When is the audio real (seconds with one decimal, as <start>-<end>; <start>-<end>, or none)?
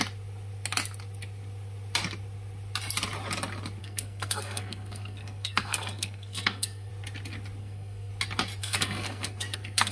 0.0-3.8; 6.9-7.6; 8.1-8.6